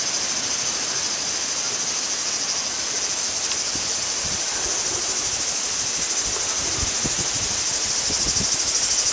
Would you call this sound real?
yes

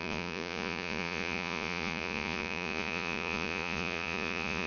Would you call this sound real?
no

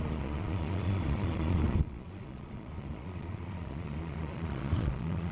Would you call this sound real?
no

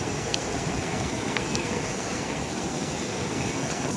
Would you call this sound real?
no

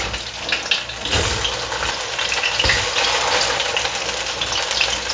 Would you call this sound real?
yes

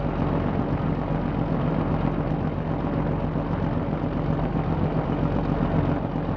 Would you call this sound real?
yes